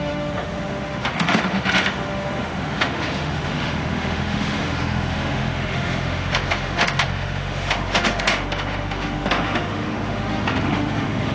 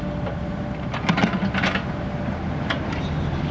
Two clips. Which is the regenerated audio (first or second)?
first